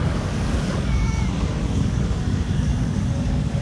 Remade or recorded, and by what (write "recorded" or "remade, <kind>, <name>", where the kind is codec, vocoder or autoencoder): remade, codec, DAC